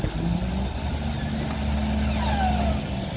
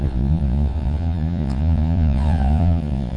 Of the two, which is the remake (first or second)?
second